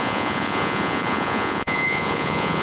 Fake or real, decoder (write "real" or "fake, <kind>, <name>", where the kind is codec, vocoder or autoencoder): fake, vocoder, Vocos